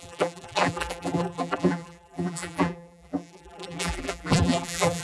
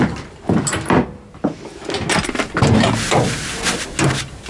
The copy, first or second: first